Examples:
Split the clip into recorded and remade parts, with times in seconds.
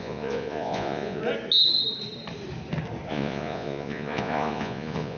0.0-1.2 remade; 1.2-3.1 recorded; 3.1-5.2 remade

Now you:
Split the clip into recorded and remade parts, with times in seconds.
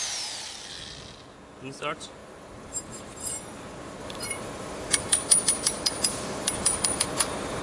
0.0-2.2 recorded; 2.2-3.6 remade; 3.6-4.0 recorded; 4.0-7.6 remade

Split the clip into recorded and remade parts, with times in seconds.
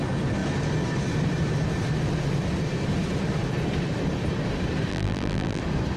0.0-4.9 recorded; 4.9-5.6 remade; 5.6-6.0 recorded